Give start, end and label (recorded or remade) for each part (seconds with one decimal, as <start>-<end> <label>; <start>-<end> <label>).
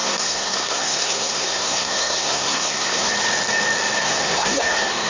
0.0-3.1 remade; 3.1-4.0 recorded; 4.0-5.1 remade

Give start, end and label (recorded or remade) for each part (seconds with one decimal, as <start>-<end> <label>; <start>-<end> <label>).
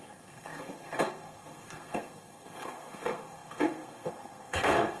0.0-5.0 remade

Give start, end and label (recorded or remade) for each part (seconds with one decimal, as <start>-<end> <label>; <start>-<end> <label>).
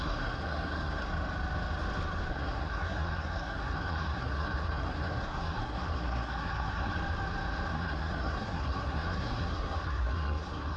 0.0-1.1 remade; 1.1-2.3 recorded; 2.3-6.9 remade; 6.9-7.7 recorded; 7.7-10.8 remade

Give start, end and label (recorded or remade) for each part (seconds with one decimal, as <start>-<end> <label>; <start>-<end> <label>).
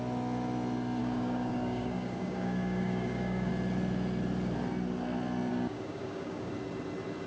0.0-1.0 recorded; 1.0-3.5 remade; 3.5-5.5 recorded; 5.5-6.5 remade; 6.5-7.3 recorded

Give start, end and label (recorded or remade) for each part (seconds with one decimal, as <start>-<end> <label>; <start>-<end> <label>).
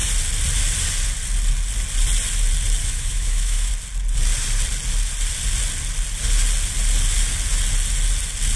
0.0-2.8 recorded; 2.8-3.7 remade; 3.7-8.6 recorded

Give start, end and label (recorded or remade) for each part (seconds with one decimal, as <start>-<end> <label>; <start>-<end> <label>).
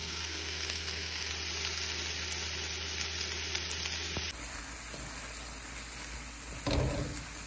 0.0-1.3 remade; 1.3-7.5 recorded